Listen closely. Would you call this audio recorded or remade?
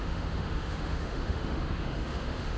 remade